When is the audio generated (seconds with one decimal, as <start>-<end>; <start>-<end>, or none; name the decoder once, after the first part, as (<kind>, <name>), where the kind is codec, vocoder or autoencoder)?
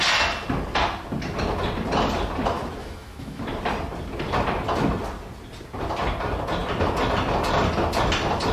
2.8-3.4 (autoencoder, DAC-VAE)